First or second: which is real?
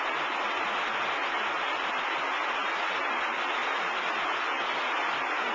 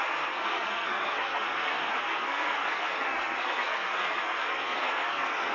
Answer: first